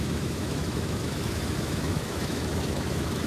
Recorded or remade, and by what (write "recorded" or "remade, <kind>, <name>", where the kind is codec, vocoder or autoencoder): remade, autoencoder, DAC-VAE